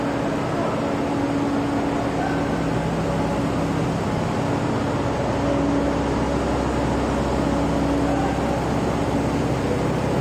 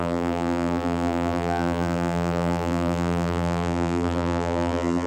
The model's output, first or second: second